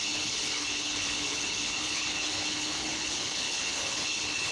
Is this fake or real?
fake